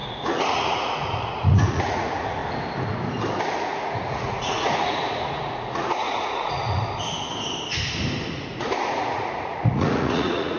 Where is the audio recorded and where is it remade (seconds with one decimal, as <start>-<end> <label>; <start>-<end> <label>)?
0.0-2.4 remade; 2.4-3.6 recorded; 3.6-6.8 remade; 6.8-8.3 recorded; 8.3-10.6 remade

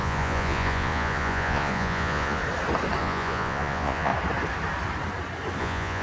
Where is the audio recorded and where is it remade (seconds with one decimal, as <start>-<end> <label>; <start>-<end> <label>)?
0.0-2.4 remade; 2.4-3.0 recorded; 3.0-4.1 remade; 4.1-5.6 recorded; 5.6-6.0 remade

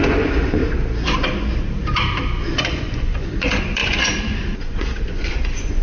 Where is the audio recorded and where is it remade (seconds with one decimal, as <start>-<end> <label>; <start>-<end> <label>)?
0.0-0.6 remade; 0.6-2.4 recorded; 2.4-5.8 remade